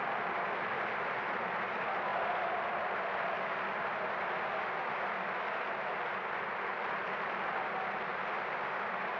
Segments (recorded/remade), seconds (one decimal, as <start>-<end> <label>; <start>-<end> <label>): 0.0-9.2 recorded